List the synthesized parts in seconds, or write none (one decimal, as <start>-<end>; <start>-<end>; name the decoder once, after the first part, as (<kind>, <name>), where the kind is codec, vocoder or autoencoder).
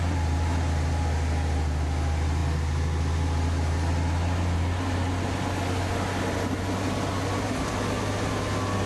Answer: none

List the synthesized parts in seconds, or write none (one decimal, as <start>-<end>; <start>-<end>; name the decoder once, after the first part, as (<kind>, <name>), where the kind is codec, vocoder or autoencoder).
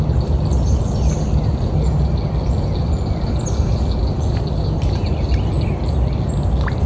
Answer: none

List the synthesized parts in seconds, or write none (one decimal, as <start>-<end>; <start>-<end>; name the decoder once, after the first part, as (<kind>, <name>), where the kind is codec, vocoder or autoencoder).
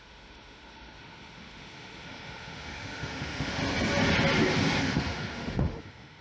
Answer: 0.0-3.6 (autoencoder, DAC-VAE); 4.8-6.2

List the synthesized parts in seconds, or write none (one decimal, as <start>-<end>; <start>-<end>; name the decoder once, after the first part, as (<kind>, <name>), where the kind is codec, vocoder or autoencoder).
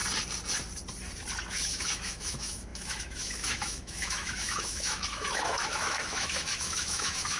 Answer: 1.5-7.4 (autoencoder, DAC-VAE)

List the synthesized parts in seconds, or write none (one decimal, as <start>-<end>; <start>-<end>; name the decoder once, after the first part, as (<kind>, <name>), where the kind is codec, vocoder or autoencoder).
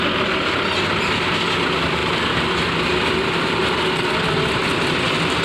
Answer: none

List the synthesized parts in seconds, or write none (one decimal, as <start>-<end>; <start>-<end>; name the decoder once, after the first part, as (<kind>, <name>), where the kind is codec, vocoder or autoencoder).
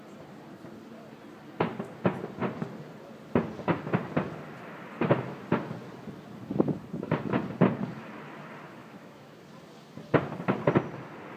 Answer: 8.8-9.4 (autoencoder, DAC-VAE)